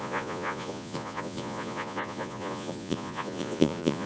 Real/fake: fake